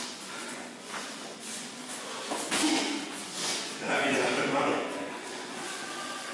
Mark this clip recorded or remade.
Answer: remade